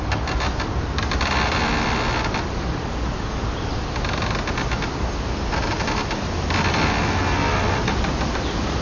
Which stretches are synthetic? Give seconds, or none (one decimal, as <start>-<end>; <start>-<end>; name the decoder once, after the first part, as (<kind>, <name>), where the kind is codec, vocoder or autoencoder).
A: none